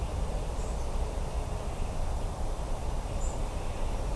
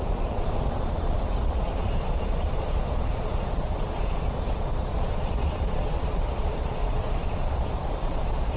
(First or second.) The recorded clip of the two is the first